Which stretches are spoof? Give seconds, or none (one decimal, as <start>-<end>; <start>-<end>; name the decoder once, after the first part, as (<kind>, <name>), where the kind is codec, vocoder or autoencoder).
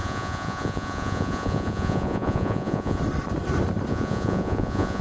0.0-3.0 (vocoder, Vocos); 3.9-5.0